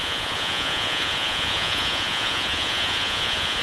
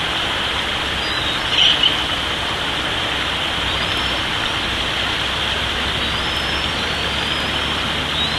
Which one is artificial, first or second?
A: first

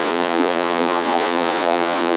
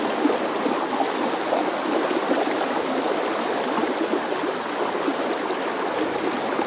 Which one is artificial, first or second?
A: first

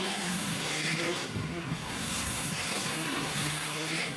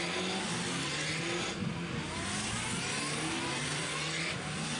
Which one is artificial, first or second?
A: first